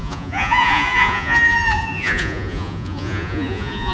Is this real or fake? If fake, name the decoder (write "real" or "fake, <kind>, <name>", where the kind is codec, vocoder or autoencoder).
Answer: fake, vocoder, Vocos